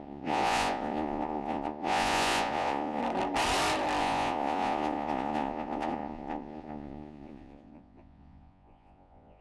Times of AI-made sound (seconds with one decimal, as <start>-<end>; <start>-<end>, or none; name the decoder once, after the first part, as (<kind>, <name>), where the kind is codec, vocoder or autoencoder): 0.0-3.0 (vocoder, Vocos); 4.0-9.4